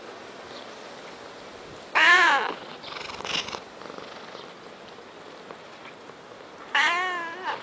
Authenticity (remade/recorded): recorded